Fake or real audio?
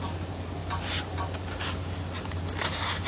real